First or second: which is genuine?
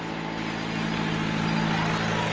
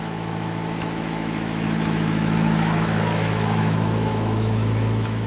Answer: first